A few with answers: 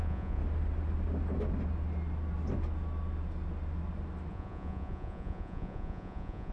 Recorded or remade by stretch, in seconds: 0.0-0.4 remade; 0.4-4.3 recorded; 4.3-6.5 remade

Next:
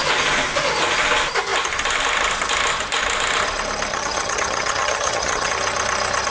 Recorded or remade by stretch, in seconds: 0.0-3.9 recorded; 3.9-5.5 remade; 5.5-6.3 recorded

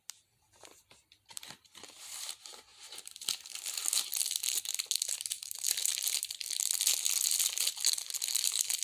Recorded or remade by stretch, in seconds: 0.0-8.8 recorded

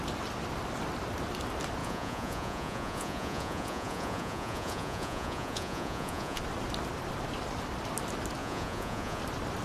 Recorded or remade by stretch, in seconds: 0.0-1.8 recorded; 1.8-6.4 remade; 6.4-8.4 recorded; 8.4-9.2 remade; 9.2-9.6 recorded

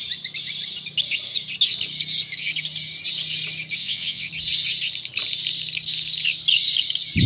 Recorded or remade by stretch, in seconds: 0.0-3.8 recorded; 3.8-4.3 remade; 4.3-7.3 recorded